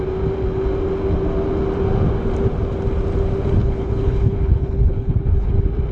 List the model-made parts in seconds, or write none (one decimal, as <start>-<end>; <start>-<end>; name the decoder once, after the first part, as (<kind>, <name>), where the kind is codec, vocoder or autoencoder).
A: 3.6-5.5 (codec, HILCodec)